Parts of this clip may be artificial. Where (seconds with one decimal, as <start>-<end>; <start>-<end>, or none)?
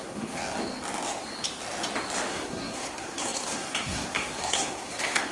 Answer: 0.0-0.4; 2.3-5.3